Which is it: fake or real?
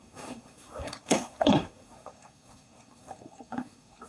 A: fake